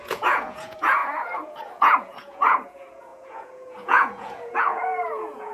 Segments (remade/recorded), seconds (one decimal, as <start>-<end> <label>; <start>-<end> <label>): 0.0-5.5 remade